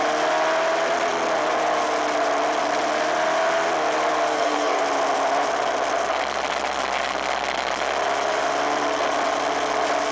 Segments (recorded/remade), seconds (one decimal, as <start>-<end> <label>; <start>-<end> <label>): 0.0-4.3 recorded; 4.3-4.8 remade; 4.8-10.1 recorded